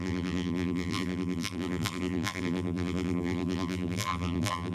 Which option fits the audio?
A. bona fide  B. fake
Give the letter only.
B